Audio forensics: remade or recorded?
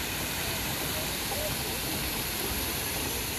recorded